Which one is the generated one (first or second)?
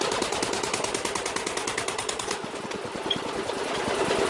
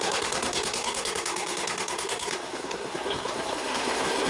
second